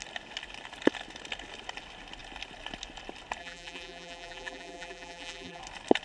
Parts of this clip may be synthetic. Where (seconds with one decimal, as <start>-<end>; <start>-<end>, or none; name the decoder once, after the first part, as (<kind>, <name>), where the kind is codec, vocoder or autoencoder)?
3.4-5.6 (vocoder, BigVGAN v2)